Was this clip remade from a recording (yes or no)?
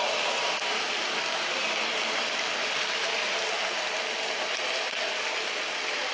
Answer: no